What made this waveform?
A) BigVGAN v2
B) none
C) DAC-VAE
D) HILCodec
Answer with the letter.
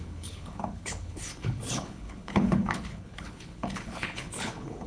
D